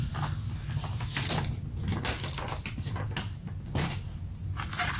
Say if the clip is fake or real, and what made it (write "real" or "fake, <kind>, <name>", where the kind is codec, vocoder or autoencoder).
real